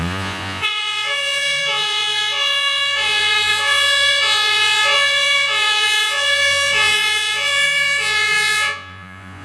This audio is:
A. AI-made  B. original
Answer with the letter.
A